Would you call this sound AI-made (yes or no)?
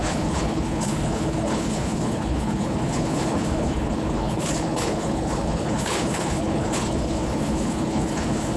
yes